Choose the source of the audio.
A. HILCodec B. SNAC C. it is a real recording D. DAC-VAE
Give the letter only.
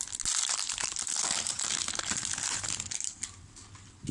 C